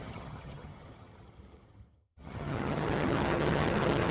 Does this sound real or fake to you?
fake